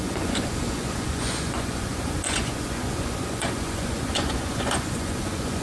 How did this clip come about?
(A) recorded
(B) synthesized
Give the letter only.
B